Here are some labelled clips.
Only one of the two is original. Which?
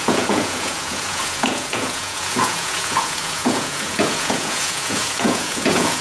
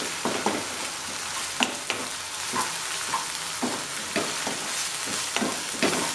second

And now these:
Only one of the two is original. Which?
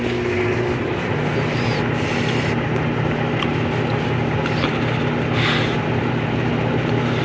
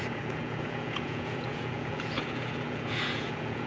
first